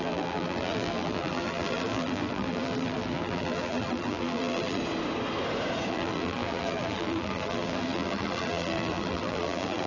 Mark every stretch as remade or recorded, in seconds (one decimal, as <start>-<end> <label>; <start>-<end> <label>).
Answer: 0.0-4.8 remade; 4.8-5.9 recorded; 5.9-9.9 remade